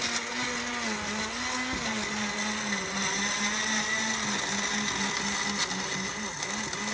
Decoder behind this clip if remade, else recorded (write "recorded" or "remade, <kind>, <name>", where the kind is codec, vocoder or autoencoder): recorded